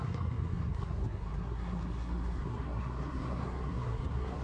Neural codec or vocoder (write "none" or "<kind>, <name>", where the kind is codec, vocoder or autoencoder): codec, SNAC